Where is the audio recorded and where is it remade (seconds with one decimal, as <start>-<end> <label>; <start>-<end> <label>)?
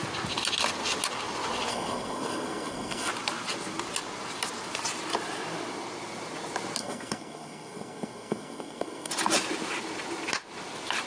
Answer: 0.0-1.7 recorded; 1.7-3.1 remade; 3.1-6.8 recorded; 6.8-9.1 remade; 9.1-11.1 recorded